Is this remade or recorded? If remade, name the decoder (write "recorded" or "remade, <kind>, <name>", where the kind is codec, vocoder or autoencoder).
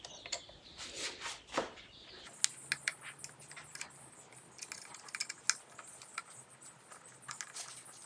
recorded